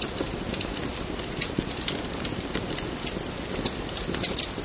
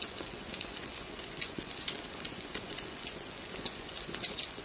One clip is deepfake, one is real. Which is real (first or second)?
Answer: first